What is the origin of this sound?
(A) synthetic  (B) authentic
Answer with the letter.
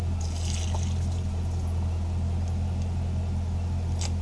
B